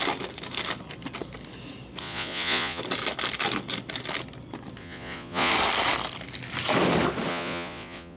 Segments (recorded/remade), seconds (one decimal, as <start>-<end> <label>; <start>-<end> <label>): 0.0-2.0 recorded; 2.0-2.8 remade; 2.8-4.8 recorded; 4.8-5.5 remade; 5.5-7.3 recorded; 7.3-8.2 remade